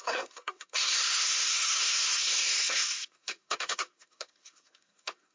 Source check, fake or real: fake